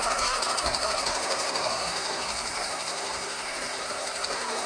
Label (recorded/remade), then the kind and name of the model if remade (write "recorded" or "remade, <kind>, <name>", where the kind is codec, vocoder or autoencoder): remade, codec, SNAC